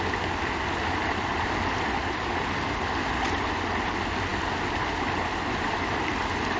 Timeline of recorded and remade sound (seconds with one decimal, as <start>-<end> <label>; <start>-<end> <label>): 0.0-6.6 recorded